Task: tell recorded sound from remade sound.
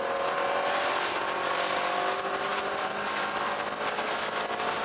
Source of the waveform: recorded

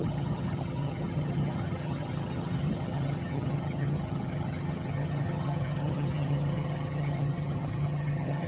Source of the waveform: remade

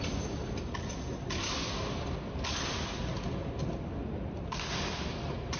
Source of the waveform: recorded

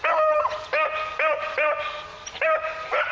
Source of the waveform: recorded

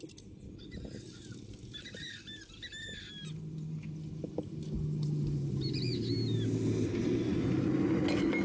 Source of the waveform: recorded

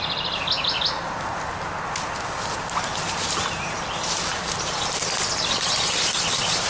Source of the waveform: recorded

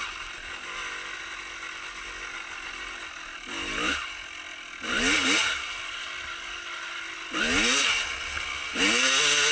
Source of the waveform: recorded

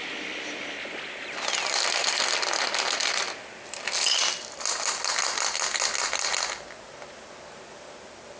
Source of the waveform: recorded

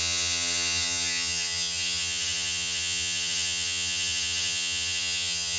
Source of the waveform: remade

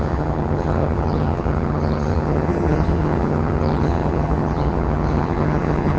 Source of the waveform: remade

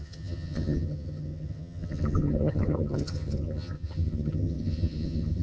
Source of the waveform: remade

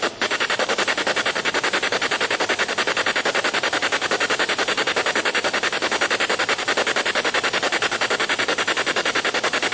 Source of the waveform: recorded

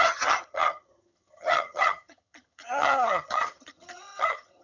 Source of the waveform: remade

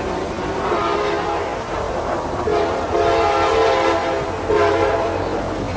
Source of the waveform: recorded